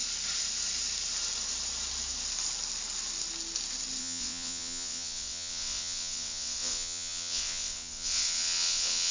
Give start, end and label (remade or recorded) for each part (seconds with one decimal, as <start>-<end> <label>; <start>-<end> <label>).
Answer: 0.0-4.0 recorded; 4.0-9.1 remade

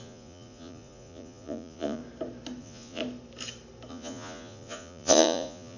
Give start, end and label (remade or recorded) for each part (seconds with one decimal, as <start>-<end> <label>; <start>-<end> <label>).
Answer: 0.0-2.0 remade; 2.0-2.6 recorded; 2.6-3.0 remade; 3.0-3.9 recorded; 3.9-5.8 remade